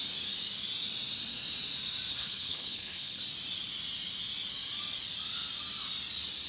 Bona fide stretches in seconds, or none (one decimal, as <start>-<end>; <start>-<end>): 0.0-2.1; 3.2-6.5